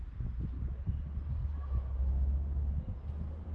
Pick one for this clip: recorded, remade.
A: recorded